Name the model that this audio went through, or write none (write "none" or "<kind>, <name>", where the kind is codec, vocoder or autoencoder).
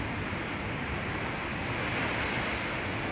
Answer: none